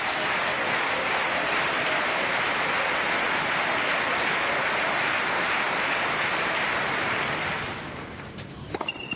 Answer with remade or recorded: recorded